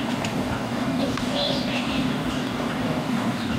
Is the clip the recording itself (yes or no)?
no